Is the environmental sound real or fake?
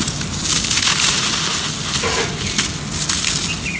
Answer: real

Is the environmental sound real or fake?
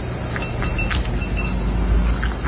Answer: real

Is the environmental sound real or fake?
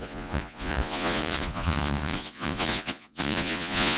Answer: fake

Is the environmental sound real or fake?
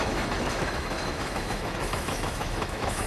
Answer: fake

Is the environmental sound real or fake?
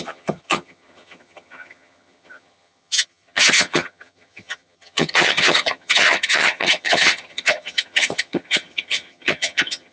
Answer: fake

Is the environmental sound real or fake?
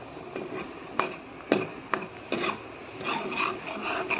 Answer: real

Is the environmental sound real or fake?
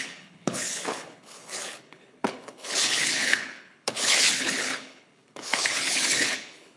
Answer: fake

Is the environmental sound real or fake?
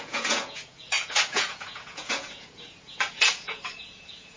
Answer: fake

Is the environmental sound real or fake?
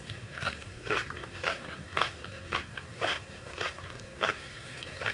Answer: fake